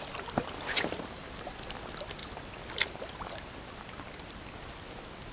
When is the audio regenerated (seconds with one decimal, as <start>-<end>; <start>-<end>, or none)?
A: none